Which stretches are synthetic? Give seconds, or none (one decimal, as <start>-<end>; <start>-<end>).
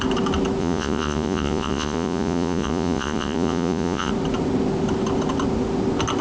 0.6-4.1